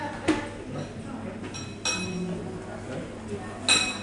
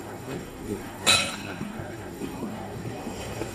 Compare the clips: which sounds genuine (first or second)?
first